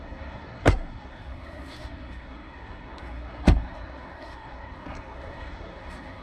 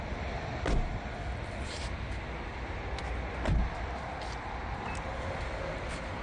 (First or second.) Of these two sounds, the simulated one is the first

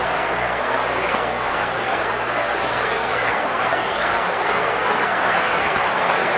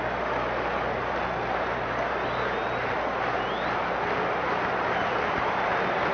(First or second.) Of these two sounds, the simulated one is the first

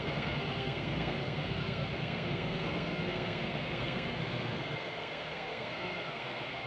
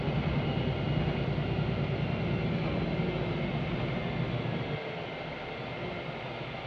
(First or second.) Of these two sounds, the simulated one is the first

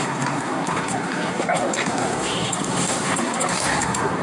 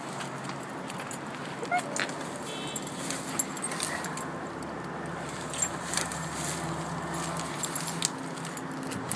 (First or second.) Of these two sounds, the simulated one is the first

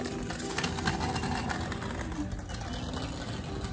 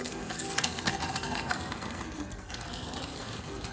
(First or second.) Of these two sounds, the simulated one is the second